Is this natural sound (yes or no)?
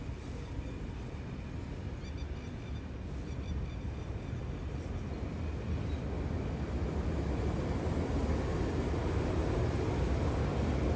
yes